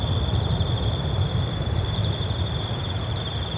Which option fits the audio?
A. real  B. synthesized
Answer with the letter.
B